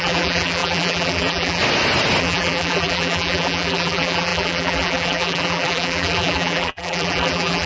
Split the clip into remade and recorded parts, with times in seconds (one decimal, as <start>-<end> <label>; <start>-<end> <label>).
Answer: 0.0-1.6 remade; 1.6-2.2 recorded; 2.2-7.7 remade

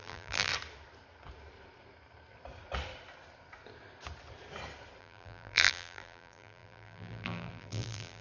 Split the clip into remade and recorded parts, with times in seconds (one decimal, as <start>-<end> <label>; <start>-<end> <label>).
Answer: 0.0-0.5 remade; 0.5-5.0 recorded; 5.0-8.2 remade

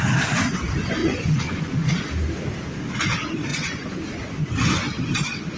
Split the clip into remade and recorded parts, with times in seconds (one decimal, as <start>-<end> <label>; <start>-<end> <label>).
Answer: 0.0-1.0 recorded; 1.0-1.9 remade; 1.9-3.5 recorded; 3.5-4.0 remade; 4.0-5.6 recorded

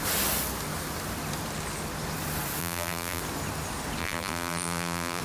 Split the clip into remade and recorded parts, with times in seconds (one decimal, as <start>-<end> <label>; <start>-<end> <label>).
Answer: 0.0-2.6 recorded; 2.6-3.2 remade; 3.2-4.0 recorded; 4.0-5.2 remade

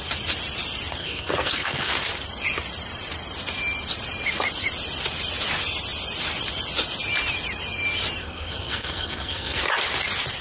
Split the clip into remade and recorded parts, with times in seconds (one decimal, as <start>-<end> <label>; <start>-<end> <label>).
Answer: 0.0-1.0 recorded; 1.0-1.9 remade; 1.9-8.2 recorded; 8.2-9.6 remade; 9.6-10.4 recorded